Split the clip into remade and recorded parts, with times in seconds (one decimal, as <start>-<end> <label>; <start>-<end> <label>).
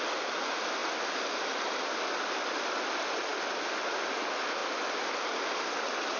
0.0-6.2 recorded